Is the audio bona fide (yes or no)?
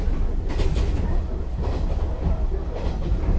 yes